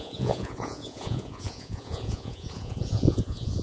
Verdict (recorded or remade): remade